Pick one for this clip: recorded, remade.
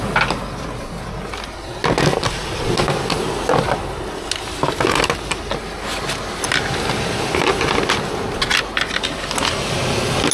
recorded